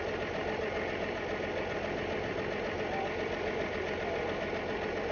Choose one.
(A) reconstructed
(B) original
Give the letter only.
B